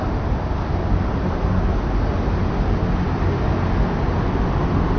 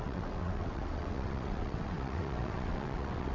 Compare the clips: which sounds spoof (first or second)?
second